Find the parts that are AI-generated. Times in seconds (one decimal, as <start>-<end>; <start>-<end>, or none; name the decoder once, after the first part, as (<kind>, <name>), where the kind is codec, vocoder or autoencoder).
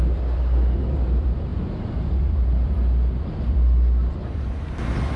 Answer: none